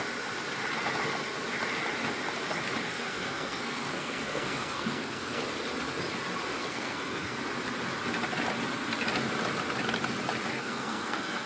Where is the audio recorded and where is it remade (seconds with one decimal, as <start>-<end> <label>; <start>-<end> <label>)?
0.0-2.9 recorded; 2.9-5.4 remade; 5.4-6.6 recorded; 6.6-7.4 remade; 7.4-10.5 recorded; 10.5-11.5 remade